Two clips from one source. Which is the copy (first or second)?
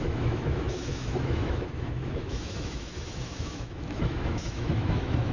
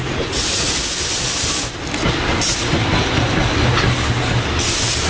first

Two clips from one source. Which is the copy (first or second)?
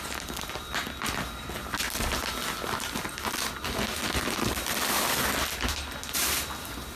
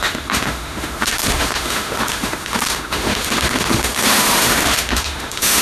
second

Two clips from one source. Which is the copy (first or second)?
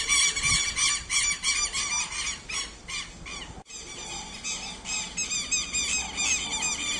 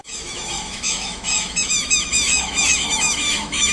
second